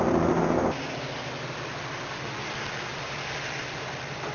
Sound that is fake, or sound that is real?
real